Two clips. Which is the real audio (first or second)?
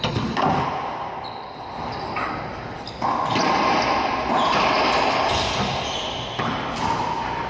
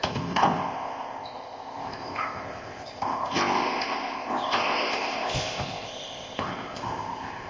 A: first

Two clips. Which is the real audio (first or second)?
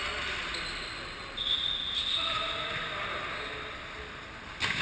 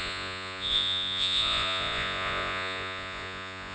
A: first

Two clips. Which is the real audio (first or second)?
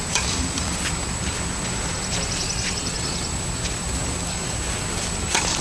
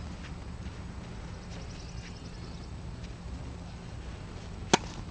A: second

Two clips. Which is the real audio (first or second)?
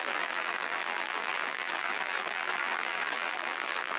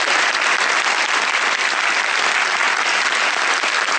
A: second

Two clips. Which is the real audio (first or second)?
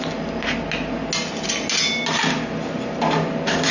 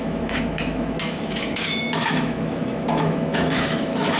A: first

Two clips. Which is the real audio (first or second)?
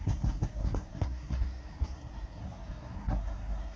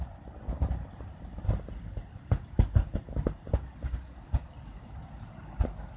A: second